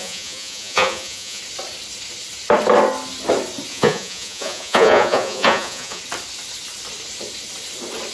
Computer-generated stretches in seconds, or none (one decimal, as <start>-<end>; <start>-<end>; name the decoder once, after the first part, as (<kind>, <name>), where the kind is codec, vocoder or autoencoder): 0.0-1.4 (vocoder, Vocos); 3.7-6.0